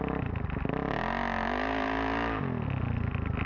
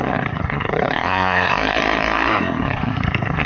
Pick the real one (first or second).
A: first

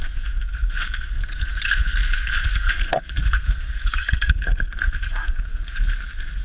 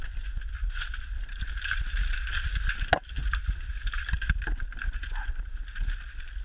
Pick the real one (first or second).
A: second